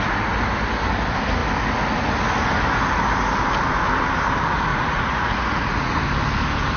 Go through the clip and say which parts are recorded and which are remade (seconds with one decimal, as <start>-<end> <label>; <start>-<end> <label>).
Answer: 0.0-4.7 recorded; 4.7-6.0 remade; 6.0-6.8 recorded